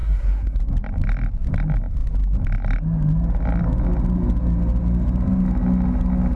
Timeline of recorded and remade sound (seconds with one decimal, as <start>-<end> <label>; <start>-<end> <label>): 0.0-0.6 remade; 0.6-6.4 recorded